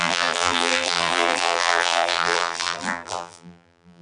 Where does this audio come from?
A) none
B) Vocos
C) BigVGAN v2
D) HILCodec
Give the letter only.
C